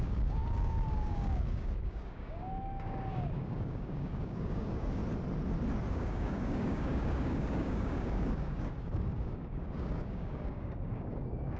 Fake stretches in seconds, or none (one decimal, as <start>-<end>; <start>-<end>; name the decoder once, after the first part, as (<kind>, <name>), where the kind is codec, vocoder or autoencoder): 0.0-5.0 (codec, DAC); 5.9-11.6